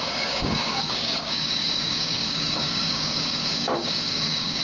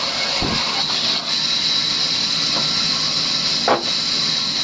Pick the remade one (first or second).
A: first